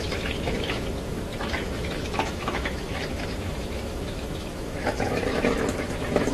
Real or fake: fake